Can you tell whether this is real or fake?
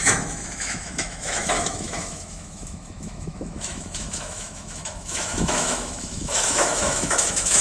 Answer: fake